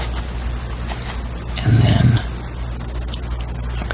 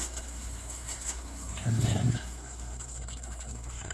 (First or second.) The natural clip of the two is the first